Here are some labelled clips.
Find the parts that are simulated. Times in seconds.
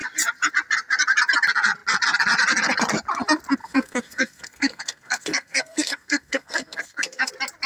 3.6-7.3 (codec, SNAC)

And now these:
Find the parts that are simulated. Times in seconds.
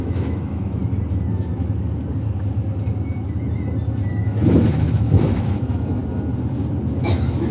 0.0-0.8 (autoencoder, DAC-VAE); 4.1-6.0; 7.0-7.5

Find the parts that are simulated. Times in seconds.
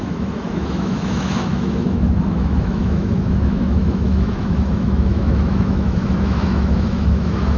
0.0-7.6 (autoencoder, DAC-VAE)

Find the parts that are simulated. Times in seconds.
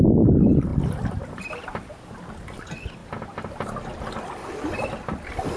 none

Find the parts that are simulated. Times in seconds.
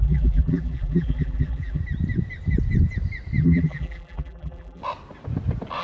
0.0-1.8 (vocoder, BigVGAN v2); 3.4-4.8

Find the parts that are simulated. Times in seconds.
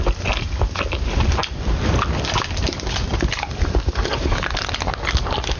none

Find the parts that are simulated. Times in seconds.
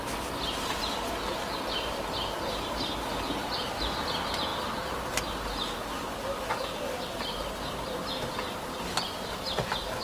none